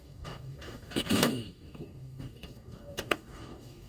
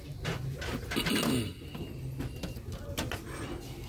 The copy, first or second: first